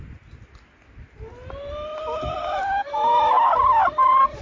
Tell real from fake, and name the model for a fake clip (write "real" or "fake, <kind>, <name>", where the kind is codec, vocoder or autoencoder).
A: real